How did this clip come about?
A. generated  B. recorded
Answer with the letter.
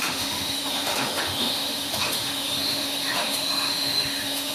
A